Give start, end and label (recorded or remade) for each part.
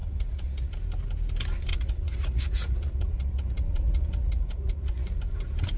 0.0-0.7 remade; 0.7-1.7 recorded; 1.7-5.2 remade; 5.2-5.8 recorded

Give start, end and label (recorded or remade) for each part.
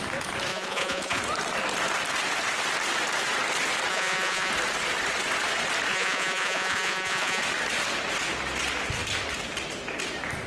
0.0-0.5 recorded; 0.5-1.2 remade; 1.2-3.9 recorded; 3.9-4.5 remade; 4.5-5.9 recorded; 5.9-7.4 remade; 7.4-10.5 recorded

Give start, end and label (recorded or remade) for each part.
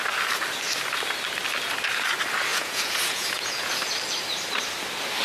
0.0-2.5 recorded; 2.5-3.7 remade; 3.7-5.2 recorded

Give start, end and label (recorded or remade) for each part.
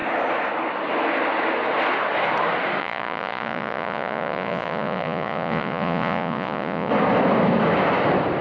0.0-2.8 recorded; 2.8-6.9 remade; 6.9-8.4 recorded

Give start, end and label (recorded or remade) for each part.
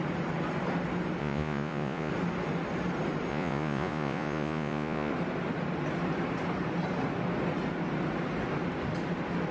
0.0-1.2 recorded; 1.2-2.1 remade; 2.1-3.3 recorded; 3.3-5.1 remade; 5.1-9.5 recorded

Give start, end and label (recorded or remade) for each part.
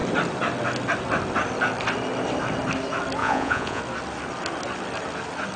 0.0-3.2 recorded; 3.2-3.8 remade; 3.8-5.6 recorded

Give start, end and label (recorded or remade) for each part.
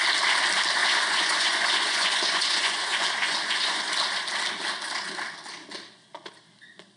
0.0-0.8 recorded; 0.8-3.9 remade; 3.9-7.0 recorded